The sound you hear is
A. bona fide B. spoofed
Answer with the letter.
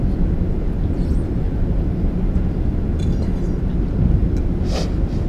A